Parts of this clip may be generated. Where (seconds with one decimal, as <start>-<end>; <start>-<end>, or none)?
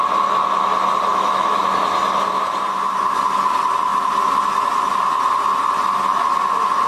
1.1-1.6